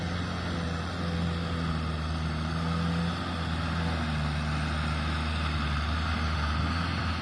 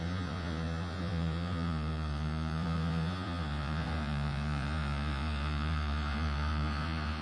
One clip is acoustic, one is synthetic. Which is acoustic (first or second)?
first